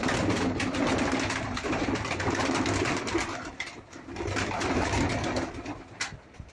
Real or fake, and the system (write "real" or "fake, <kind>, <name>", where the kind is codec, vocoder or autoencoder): fake, vocoder, BigVGAN v2